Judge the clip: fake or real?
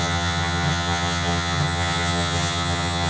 fake